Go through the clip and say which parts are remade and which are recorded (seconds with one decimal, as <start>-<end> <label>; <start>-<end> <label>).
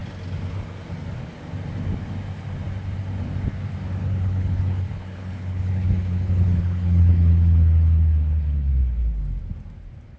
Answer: 0.0-4.0 recorded; 4.0-9.2 remade; 9.2-10.2 recorded